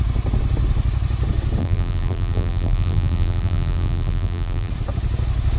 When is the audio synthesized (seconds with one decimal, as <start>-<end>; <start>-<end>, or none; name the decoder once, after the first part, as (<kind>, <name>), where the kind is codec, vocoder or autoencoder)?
1.6-4.7 (vocoder, BigVGAN v2)